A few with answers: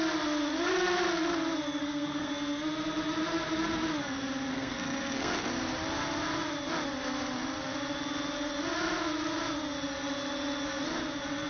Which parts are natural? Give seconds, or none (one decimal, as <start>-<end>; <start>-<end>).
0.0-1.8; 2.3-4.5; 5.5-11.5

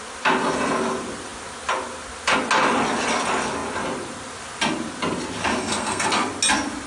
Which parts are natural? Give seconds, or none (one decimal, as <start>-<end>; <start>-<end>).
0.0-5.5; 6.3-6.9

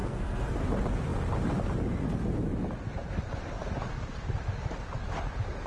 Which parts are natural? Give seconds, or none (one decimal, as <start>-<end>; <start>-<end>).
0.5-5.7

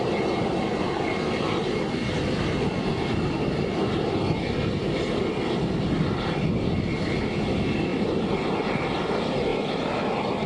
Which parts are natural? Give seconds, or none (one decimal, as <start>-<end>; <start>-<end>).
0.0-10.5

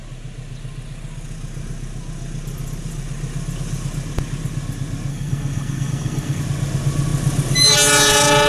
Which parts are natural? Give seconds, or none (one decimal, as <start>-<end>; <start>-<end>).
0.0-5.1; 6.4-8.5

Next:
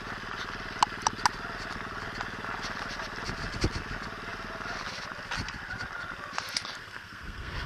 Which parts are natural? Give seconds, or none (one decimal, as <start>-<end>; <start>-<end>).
0.0-6.8

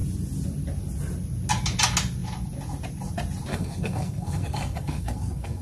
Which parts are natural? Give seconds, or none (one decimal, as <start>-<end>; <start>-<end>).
0.0-3.5

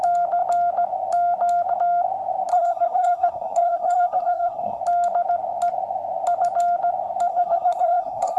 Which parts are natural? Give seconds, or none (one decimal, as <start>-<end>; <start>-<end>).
0.0-2.5; 4.8-7.3